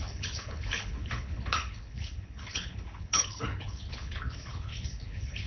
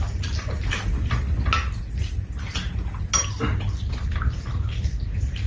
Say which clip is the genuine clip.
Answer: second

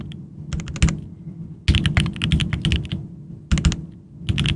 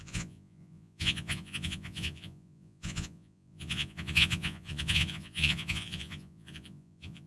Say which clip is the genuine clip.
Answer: first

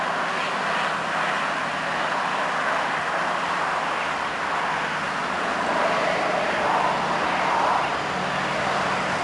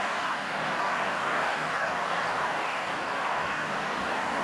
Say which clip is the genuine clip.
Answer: first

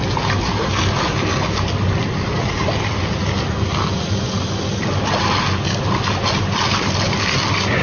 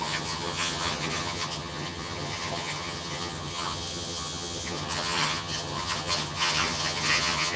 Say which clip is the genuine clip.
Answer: first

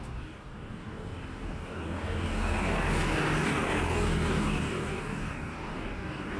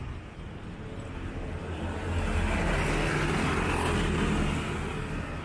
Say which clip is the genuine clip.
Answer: second